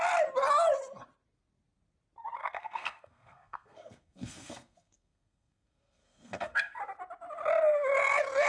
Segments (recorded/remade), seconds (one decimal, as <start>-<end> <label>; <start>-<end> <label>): 0.0-2.4 recorded; 2.4-6.8 remade; 6.8-8.5 recorded